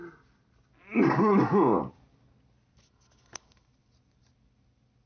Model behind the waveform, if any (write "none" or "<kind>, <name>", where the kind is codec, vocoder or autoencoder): none